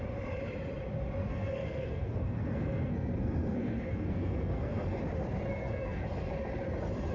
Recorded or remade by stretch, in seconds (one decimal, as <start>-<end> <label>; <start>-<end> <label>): 0.0-1.2 recorded; 1.2-5.0 remade; 5.0-5.5 recorded; 5.5-6.0 remade; 6.0-7.1 recorded